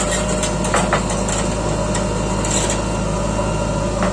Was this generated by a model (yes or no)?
no